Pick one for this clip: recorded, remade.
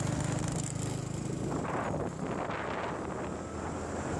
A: recorded